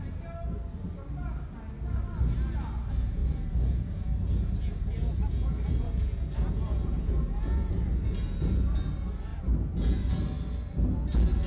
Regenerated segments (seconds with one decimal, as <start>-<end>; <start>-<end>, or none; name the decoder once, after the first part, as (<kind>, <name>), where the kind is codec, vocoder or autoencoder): 3.2-7.7 (vocoder, Vocos)